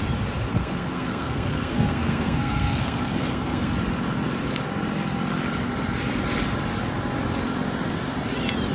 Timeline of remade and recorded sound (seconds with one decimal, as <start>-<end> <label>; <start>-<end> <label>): 0.0-0.5 recorded; 0.5-3.7 remade; 3.7-8.7 recorded